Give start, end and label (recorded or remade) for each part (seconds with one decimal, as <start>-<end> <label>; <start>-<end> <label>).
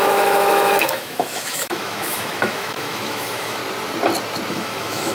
0.0-3.6 remade; 3.6-4.5 recorded; 4.5-5.1 remade